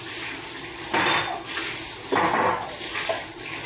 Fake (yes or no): no